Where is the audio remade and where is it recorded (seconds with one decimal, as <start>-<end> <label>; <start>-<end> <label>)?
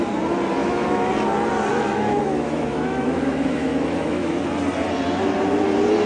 0.0-0.6 recorded; 0.6-1.1 remade; 1.1-1.7 recorded; 1.7-4.4 remade; 4.4-6.1 recorded